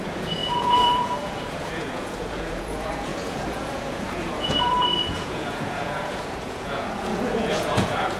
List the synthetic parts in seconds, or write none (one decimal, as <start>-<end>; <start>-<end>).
0.0-8.2